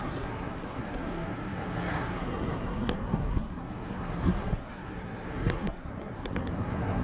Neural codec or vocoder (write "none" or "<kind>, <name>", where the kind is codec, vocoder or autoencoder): codec, SNAC